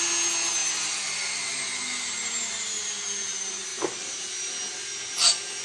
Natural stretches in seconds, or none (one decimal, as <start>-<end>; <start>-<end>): 0.0-5.6